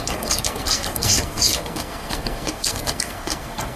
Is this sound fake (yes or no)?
yes